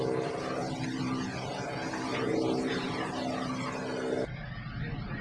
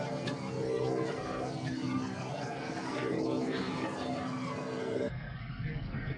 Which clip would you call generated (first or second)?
second